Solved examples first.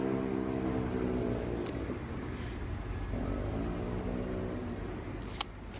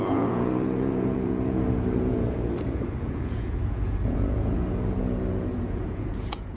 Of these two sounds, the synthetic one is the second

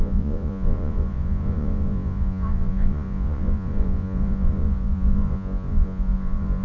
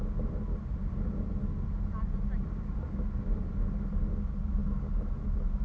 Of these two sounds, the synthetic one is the first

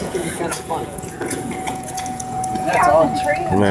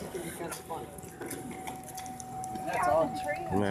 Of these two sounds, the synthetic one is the first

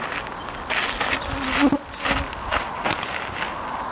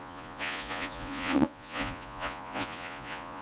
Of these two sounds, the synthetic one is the second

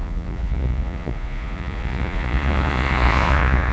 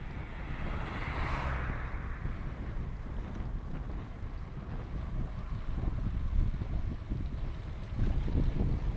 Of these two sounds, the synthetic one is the first